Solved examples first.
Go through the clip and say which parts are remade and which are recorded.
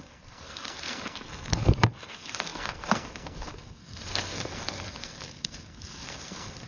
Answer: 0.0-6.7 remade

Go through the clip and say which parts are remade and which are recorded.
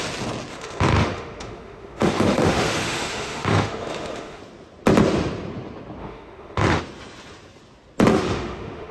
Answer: 0.0-0.5 recorded; 0.5-4.4 remade; 4.4-6.0 recorded; 6.0-6.8 remade; 6.8-8.1 recorded; 8.1-8.9 remade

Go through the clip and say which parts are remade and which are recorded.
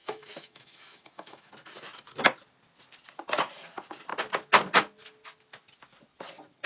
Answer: 0.0-1.5 remade; 1.5-6.7 recorded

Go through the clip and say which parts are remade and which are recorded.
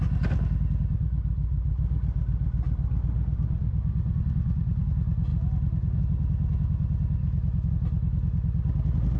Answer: 0.0-7.2 recorded; 7.2-7.7 remade; 7.7-9.2 recorded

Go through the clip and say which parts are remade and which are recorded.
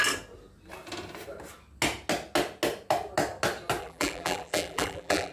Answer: 0.0-3.8 recorded; 3.8-5.3 remade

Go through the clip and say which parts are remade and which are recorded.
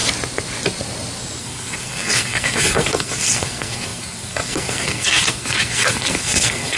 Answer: 0.0-1.4 recorded; 1.4-6.8 remade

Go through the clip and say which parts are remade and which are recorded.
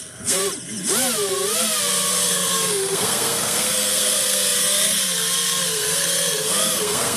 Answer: 0.0-0.4 remade; 0.4-2.1 recorded; 2.1-7.2 remade